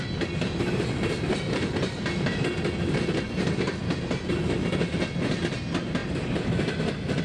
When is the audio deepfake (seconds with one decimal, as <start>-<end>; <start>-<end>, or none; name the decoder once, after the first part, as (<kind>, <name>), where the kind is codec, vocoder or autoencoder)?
none